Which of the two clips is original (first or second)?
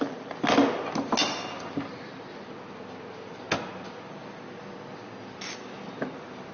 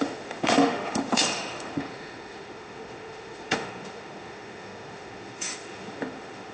first